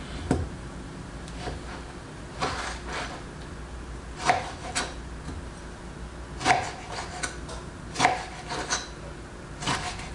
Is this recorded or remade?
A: recorded